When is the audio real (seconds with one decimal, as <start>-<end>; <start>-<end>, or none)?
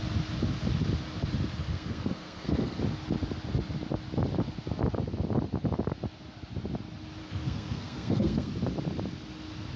0.0-1.6; 2.8-7.2; 8.5-9.8